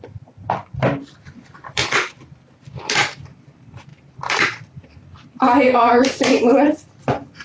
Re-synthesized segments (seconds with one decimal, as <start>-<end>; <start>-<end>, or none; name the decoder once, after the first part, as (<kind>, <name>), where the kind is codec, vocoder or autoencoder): 0.0-1.8 (vocoder, BigVGAN v2); 2.3-7.4